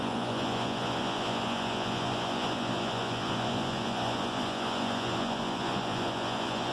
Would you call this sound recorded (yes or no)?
no